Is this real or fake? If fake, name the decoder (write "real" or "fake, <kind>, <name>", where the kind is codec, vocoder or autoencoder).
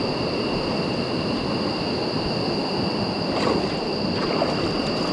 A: real